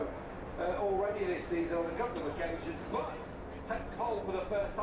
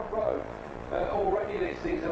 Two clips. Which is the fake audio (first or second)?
second